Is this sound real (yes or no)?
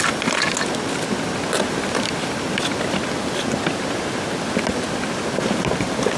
yes